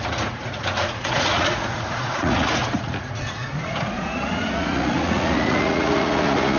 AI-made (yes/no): yes